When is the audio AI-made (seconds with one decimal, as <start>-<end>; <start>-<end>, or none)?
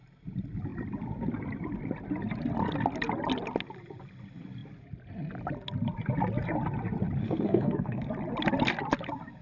7.2-8.1